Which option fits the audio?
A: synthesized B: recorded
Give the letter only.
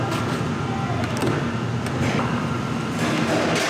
B